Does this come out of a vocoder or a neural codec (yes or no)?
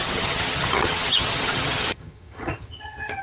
yes